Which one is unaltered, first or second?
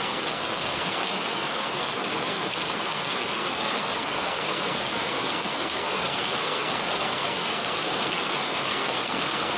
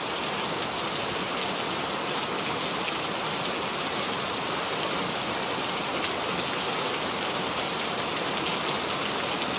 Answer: second